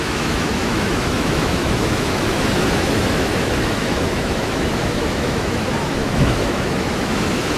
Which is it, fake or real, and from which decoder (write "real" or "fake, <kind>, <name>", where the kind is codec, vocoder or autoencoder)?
fake, autoencoder, DAC-VAE